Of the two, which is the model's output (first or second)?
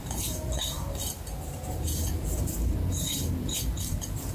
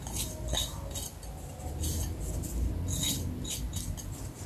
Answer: first